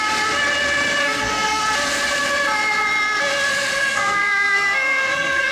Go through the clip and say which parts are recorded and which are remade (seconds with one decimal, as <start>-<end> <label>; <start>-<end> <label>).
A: 0.0-1.0 recorded; 1.0-1.6 remade; 1.6-3.7 recorded; 3.7-5.5 remade